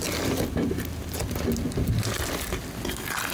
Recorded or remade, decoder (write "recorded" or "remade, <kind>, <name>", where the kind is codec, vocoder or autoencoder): recorded